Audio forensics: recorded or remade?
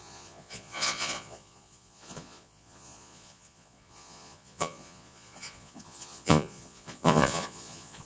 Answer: remade